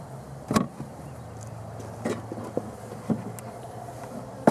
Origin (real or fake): real